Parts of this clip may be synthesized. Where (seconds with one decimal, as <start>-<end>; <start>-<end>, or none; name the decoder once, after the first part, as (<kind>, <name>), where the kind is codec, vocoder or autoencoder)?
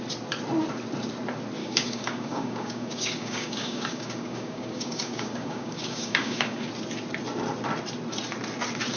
1.6-6.7 (codec, DAC)